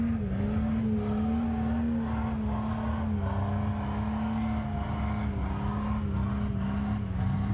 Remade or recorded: recorded